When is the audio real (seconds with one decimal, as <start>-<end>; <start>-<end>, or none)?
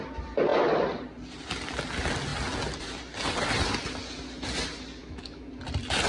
0.0-5.0; 5.5-6.1